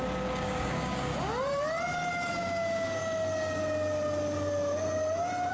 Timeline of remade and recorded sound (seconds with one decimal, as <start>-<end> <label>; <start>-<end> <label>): 0.0-1.1 remade; 1.1-2.3 recorded; 2.3-3.0 remade; 3.0-5.5 recorded